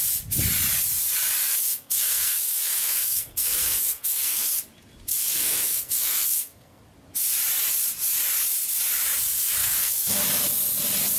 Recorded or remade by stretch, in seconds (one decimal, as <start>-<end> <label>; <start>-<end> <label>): 0.0-1.5 recorded; 1.5-4.6 remade; 4.6-5.1 recorded; 5.1-6.8 remade; 6.8-9.6 recorded; 9.6-10.2 remade; 10.2-11.2 recorded